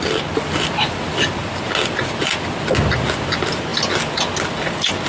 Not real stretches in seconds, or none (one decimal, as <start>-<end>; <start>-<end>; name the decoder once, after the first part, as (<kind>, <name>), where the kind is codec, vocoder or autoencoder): none